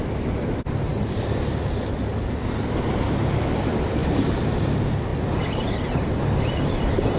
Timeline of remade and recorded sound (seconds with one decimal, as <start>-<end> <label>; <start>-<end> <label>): 0.0-7.2 recorded